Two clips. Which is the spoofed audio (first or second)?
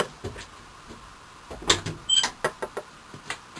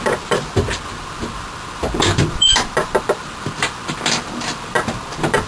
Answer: second